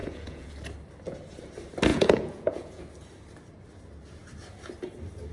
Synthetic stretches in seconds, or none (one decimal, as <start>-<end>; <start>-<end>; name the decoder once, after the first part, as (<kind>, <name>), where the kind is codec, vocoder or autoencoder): 0.0-0.5 (vocoder, Vocos); 1.9-2.8